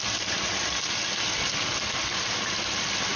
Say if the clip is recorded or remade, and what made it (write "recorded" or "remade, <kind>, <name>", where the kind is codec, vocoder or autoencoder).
remade, vocoder, BigVGAN v2